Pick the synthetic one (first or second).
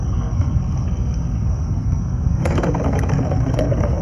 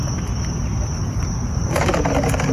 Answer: first